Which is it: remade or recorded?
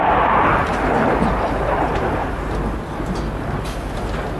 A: recorded